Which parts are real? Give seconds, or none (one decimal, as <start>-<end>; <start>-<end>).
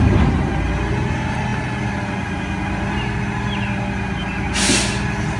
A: 0.0-5.4